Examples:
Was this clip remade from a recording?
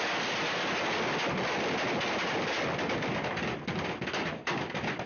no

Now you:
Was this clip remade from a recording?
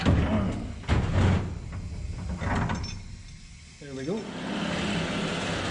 no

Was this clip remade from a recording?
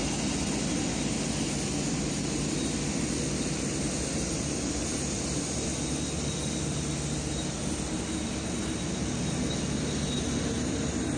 no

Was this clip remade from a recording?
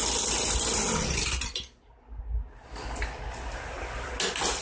no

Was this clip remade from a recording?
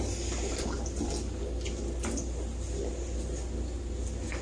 no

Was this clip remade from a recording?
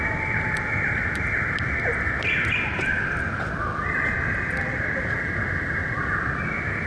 no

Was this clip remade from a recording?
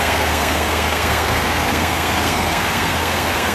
yes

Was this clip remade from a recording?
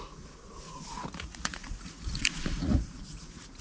yes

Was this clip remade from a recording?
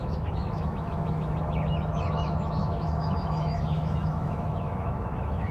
yes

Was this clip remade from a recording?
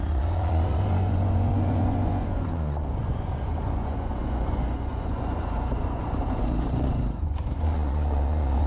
yes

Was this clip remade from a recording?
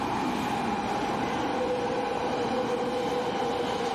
no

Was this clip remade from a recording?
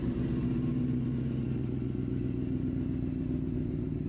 no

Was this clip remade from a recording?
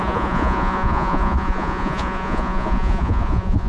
yes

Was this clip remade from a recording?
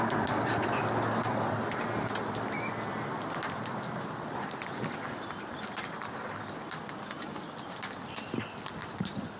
no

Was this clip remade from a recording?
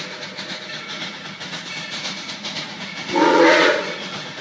yes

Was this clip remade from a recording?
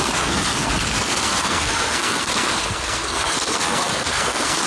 yes